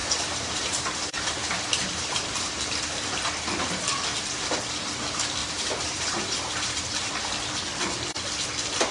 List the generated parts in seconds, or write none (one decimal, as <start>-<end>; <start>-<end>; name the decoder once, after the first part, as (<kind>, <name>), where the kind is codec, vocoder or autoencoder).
0.0-2.6 (vocoder, BigVGAN v2); 5.4-7.1